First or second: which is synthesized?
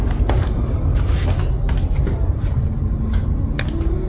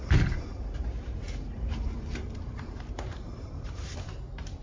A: second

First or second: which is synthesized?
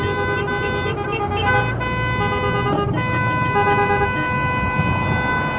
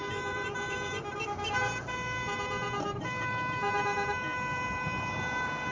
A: second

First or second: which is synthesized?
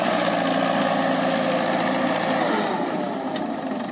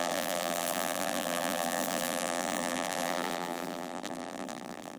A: second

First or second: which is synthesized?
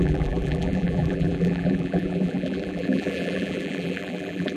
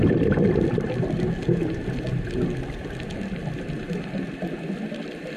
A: first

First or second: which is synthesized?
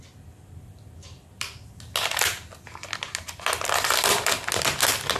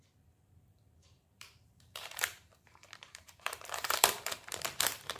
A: second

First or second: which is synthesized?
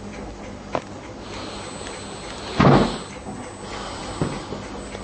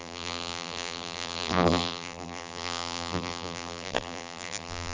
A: second